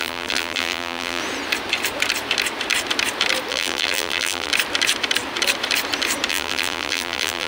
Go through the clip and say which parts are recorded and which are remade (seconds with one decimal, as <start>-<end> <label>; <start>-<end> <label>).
0.0-1.2 remade; 1.2-3.5 recorded; 3.5-4.5 remade; 4.5-6.3 recorded; 6.3-7.5 remade